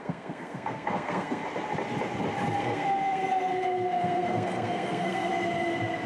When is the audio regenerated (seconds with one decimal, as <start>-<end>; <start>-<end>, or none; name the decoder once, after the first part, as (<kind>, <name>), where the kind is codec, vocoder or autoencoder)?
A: 0.0-1.4 (codec, SNAC); 2.6-5.3